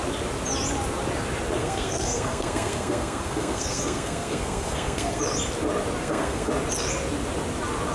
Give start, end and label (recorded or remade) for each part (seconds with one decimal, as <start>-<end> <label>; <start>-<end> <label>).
0.0-1.6 recorded; 1.6-5.2 remade; 5.2-6.0 recorded; 6.0-6.5 remade; 6.5-7.9 recorded